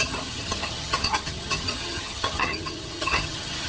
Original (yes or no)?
no